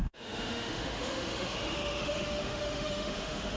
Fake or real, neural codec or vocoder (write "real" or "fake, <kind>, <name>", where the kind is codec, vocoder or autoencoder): fake, autoencoder, DAC-VAE